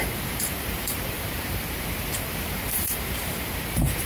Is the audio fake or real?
fake